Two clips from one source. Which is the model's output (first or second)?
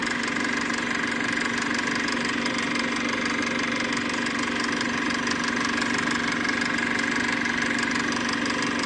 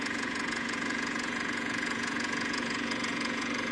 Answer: second